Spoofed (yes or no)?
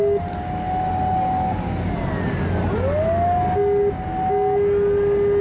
no